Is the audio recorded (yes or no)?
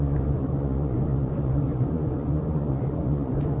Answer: no